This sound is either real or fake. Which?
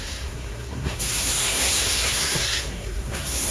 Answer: fake